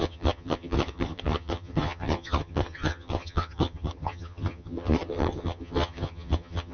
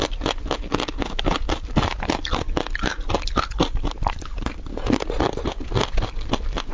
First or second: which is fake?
first